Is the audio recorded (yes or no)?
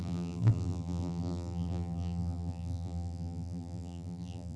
no